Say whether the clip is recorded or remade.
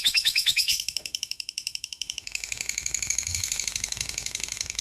remade